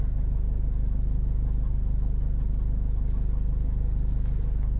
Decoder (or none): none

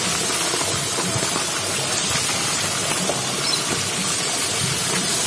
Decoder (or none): none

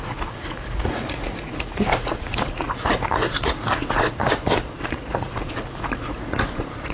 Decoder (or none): vocoder, Vocos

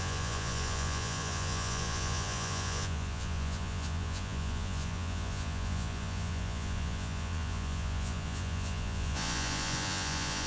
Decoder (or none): vocoder, Vocos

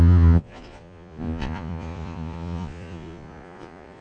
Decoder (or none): vocoder, Vocos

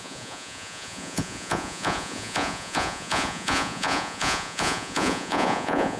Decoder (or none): vocoder, Vocos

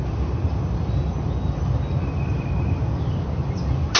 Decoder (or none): none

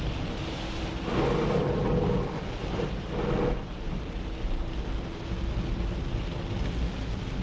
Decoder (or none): none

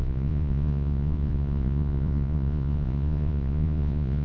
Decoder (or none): vocoder, Vocos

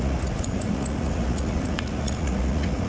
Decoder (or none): vocoder, Vocos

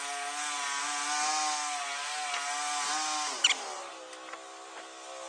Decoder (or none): none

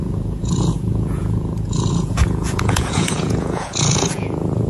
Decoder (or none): vocoder, Vocos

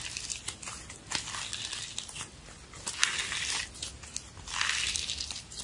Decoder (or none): none